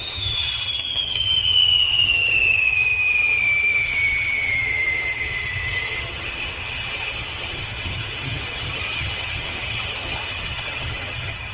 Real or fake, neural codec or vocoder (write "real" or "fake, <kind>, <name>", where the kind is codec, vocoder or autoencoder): fake, vocoder, HiFi-GAN